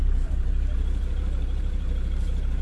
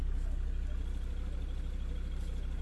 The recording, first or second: second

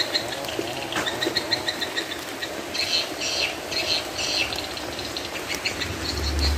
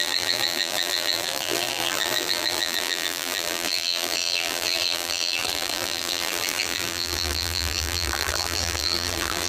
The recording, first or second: first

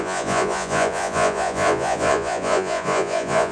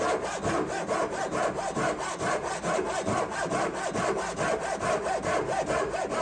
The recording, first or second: second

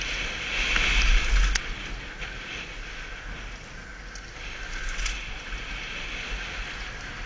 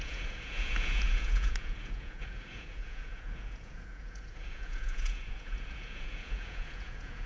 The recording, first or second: first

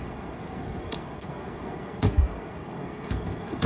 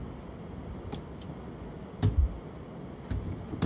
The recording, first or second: second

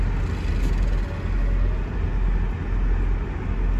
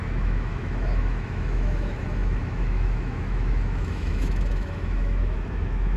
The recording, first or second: first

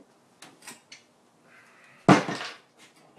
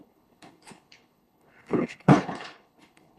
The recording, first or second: first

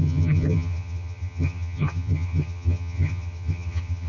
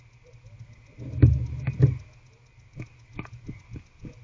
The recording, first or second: second